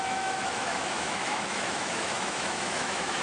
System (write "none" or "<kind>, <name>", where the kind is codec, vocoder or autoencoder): autoencoder, DAC-VAE